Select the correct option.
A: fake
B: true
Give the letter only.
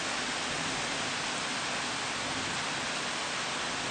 B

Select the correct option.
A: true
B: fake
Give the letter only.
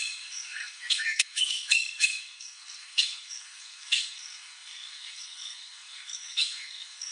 B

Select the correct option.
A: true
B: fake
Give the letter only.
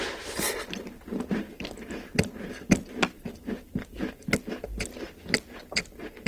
A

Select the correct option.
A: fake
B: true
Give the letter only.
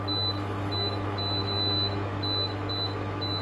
A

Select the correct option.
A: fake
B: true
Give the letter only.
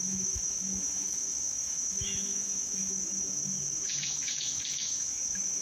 A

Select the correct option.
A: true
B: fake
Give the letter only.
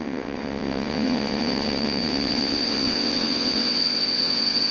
B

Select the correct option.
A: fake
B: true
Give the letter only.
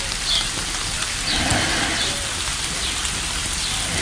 B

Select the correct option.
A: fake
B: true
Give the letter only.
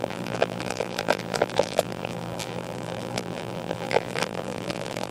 A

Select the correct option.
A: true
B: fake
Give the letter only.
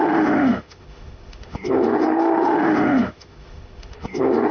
B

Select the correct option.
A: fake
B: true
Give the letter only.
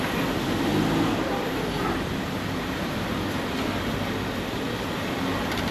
B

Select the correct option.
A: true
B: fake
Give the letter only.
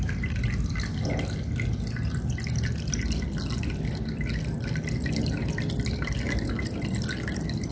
A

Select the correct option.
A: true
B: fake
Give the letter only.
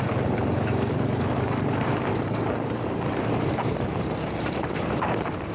B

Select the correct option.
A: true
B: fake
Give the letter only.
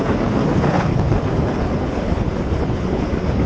B